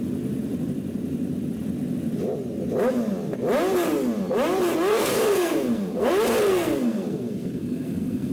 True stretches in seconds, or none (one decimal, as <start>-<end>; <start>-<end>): 0.0-4.9; 6.1-6.5